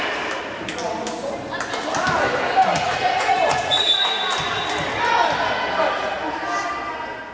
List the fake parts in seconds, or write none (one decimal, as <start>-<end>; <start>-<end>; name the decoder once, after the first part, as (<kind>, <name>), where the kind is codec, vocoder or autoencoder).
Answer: 2.7-4.1 (vocoder, Vocos)